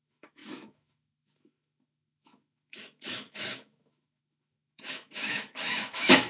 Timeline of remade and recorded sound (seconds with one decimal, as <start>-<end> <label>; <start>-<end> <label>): 0.0-6.3 remade

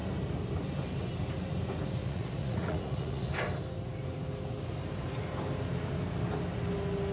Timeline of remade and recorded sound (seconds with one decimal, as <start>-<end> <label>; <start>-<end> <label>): 0.0-2.0 recorded; 2.0-3.3 remade; 3.3-7.1 recorded

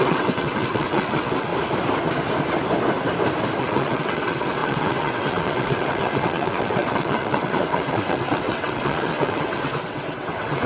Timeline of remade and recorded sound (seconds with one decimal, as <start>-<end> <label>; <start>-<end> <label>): 0.0-1.5 remade; 1.5-3.6 recorded; 3.6-10.7 remade

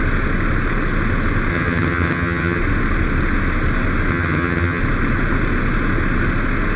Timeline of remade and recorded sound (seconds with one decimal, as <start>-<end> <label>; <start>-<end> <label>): 0.0-1.5 recorded; 1.5-2.6 remade; 2.6-4.1 recorded; 4.1-4.8 remade; 4.8-6.8 recorded